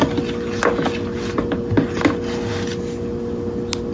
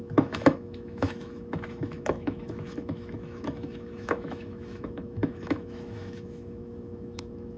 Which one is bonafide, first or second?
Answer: first